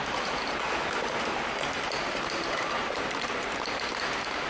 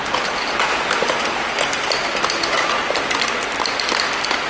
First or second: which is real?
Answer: second